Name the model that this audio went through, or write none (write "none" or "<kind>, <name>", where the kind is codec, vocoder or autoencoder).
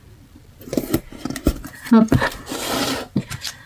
none